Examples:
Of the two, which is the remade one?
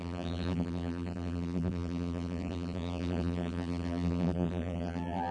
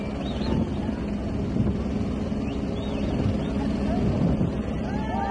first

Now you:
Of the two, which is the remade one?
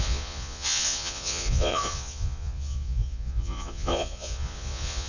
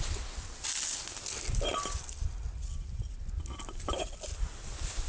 first